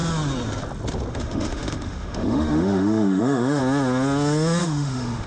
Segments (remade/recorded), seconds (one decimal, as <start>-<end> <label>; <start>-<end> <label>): 0.0-1.1 recorded; 1.1-3.6 remade; 3.6-4.6 recorded; 4.6-5.3 remade